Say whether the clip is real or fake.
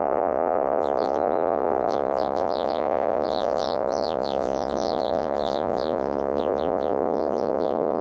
fake